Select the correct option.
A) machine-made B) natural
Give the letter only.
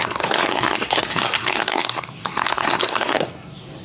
A